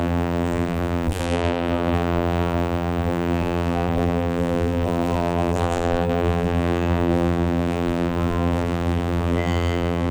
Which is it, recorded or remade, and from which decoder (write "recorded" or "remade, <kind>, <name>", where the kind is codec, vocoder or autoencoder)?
remade, vocoder, BigVGAN v2